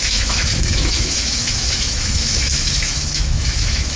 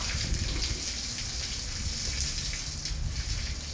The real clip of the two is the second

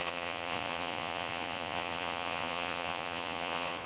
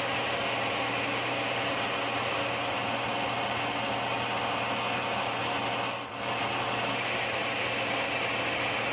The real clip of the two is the second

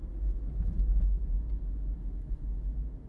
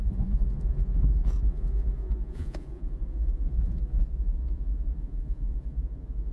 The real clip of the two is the first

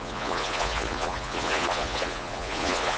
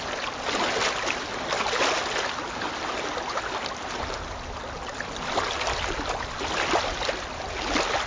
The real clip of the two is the second